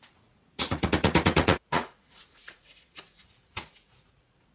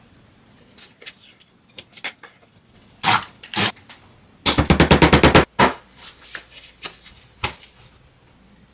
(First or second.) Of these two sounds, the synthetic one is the first